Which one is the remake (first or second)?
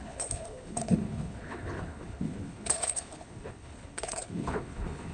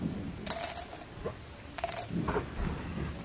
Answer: first